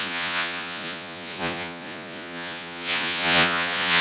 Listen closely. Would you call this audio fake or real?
fake